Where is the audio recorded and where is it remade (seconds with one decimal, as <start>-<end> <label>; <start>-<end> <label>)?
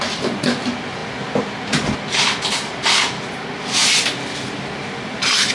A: 0.0-5.5 recorded